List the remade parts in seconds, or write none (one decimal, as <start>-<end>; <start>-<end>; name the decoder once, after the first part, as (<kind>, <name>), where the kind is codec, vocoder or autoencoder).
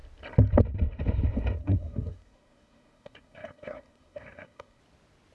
1.6-4.8 (codec, SNAC)